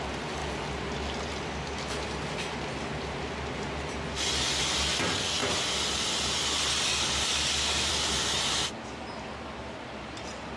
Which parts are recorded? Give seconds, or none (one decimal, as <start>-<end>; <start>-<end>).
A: 0.0-10.6